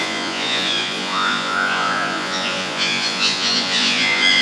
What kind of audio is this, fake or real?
fake